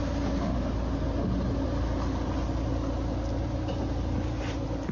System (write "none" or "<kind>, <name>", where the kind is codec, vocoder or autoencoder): none